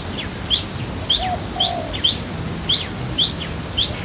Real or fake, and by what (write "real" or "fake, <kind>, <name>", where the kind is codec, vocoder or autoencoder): real